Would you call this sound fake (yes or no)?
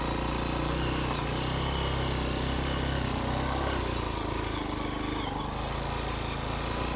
no